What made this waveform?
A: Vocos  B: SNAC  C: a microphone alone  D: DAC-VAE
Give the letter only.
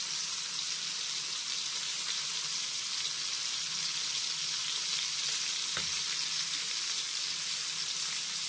C